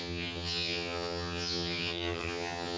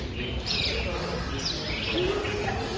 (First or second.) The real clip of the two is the second